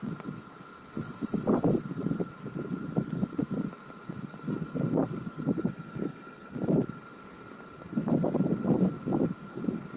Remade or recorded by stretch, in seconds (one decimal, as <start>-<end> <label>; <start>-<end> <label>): 0.0-2.9 recorded; 2.9-3.4 remade; 3.4-10.0 recorded